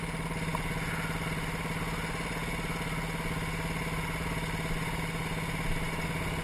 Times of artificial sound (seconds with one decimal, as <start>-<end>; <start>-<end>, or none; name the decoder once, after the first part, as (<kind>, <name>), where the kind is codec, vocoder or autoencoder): none